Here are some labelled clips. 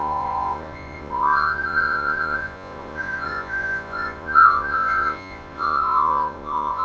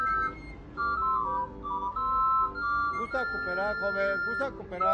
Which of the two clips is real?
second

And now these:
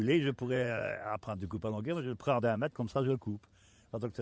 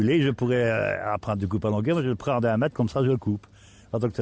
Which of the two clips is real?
second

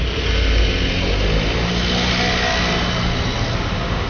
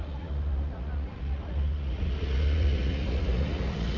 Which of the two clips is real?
first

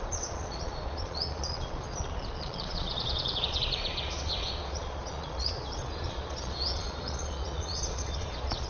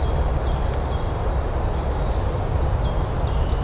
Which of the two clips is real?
second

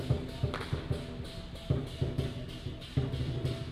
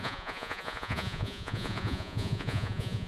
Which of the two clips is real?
first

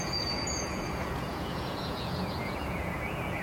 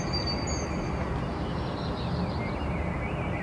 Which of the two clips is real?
second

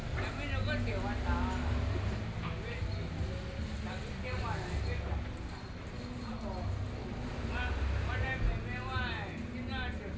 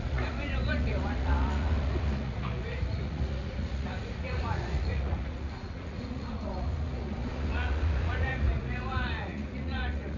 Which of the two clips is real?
first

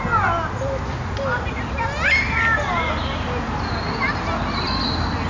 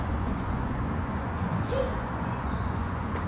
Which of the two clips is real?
first